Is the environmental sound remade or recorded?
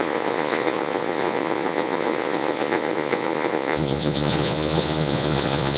remade